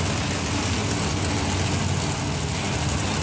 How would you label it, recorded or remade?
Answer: recorded